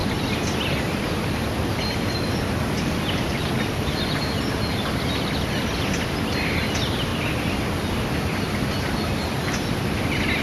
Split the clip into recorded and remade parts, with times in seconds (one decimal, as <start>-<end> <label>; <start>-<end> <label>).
0.0-10.4 recorded